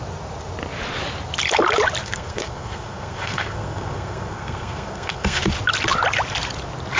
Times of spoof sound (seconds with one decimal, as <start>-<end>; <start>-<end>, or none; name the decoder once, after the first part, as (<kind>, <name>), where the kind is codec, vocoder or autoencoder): 2.0-5.4 (codec, SNAC)